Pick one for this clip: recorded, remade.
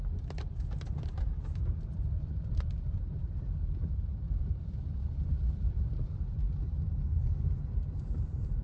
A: remade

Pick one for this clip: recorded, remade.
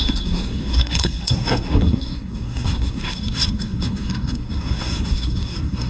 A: remade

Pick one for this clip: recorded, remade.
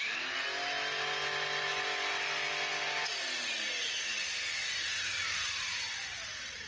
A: recorded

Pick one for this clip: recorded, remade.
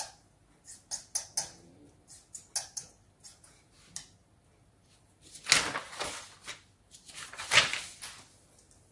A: recorded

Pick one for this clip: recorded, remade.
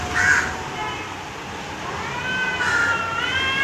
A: recorded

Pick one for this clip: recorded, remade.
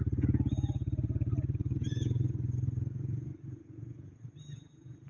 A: remade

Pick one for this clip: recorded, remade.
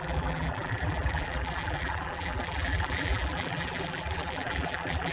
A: remade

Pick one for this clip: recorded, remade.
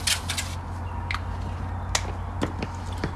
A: recorded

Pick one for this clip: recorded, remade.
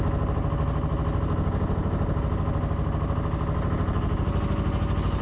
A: recorded